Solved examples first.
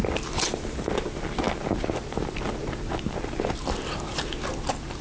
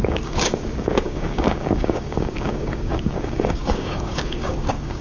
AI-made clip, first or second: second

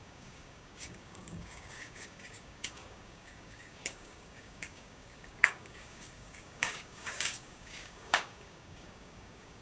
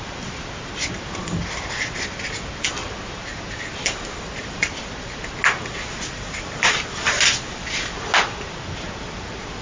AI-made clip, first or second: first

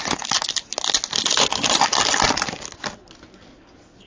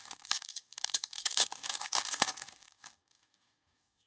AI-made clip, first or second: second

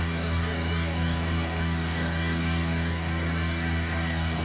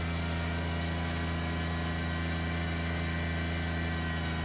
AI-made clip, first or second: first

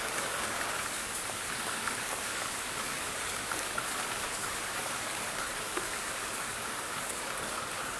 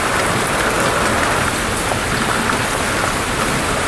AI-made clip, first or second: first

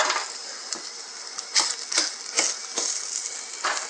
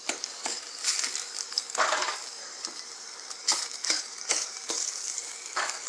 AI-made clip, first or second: second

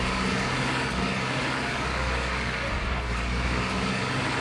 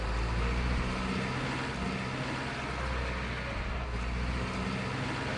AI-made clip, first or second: first